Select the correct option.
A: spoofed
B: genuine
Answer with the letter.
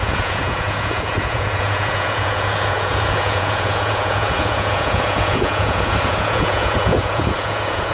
A